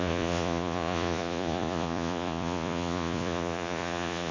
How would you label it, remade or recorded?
remade